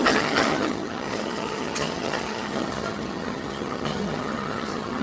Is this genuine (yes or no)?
no